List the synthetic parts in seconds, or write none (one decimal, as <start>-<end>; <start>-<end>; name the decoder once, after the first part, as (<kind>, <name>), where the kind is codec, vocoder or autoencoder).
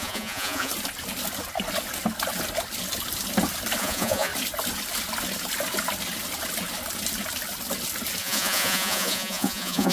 0.0-0.7 (vocoder, Vocos); 3.8-4.3; 8.2-9.9